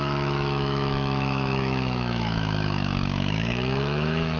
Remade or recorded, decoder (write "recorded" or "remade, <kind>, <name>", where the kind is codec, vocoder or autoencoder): remade, autoencoder, DAC-VAE